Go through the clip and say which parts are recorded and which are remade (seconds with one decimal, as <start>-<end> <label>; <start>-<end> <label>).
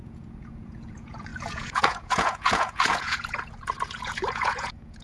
0.0-5.0 remade